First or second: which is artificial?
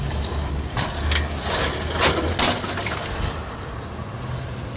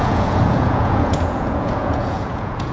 second